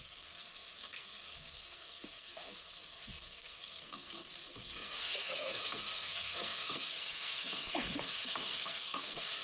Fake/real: fake